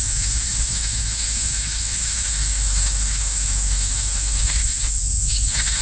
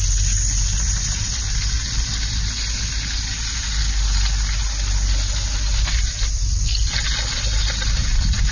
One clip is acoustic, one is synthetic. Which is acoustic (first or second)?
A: second